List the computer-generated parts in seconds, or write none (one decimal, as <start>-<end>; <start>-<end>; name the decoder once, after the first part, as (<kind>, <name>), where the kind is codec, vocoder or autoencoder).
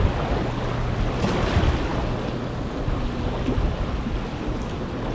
none